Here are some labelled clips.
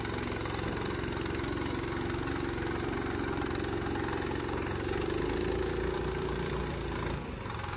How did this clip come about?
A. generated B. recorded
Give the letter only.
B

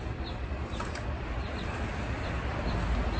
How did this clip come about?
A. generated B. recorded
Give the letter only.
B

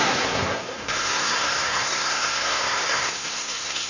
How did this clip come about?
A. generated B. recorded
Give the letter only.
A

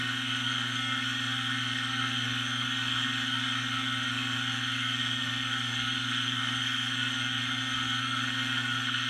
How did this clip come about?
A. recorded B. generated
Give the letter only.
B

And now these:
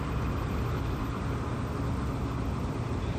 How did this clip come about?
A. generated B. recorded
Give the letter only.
B